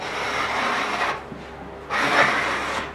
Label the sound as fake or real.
real